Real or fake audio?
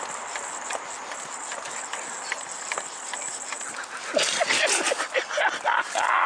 real